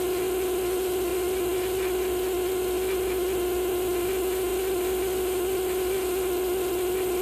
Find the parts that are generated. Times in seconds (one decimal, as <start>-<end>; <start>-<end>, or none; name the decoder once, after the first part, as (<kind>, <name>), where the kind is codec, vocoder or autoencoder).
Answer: none